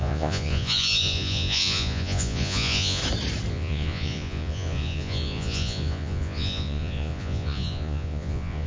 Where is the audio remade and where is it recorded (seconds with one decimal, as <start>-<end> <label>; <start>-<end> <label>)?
0.0-3.0 remade; 3.0-3.5 recorded; 3.5-8.7 remade